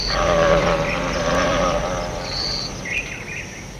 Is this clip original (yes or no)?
no